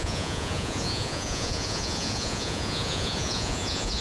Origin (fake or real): fake